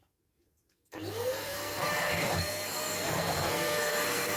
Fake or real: fake